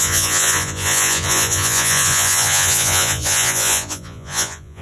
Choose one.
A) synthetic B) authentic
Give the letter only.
A